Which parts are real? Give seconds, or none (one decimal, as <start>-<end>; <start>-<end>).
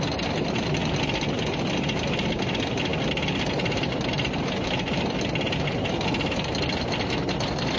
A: 0.0-7.8